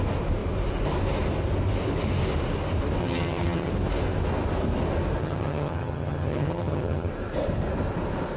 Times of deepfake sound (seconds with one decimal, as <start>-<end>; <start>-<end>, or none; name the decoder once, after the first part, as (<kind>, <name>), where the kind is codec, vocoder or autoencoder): 3.0-3.7 (vocoder, HiFi-GAN); 5.2-7.1